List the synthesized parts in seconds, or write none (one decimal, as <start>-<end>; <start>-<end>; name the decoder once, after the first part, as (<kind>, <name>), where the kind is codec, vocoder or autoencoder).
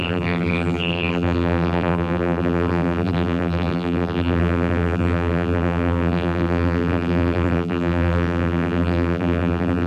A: 0.0-9.9 (vocoder, BigVGAN v2)